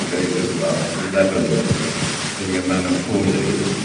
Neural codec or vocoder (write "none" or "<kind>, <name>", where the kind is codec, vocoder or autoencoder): none